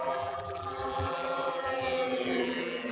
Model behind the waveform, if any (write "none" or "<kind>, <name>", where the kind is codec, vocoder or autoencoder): vocoder, BigVGAN v2